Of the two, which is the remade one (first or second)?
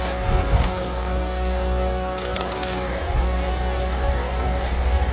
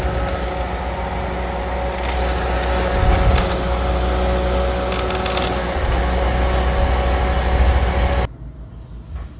first